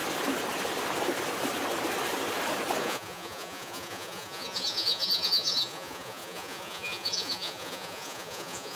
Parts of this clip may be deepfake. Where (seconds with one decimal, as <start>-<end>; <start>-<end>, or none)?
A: 2.8-8.8